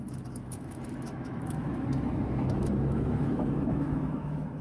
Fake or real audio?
fake